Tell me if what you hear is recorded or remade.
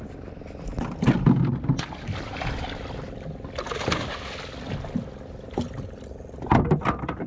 recorded